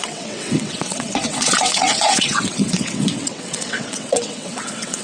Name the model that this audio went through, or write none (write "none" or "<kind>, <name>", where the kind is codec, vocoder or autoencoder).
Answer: vocoder, WaveNeXt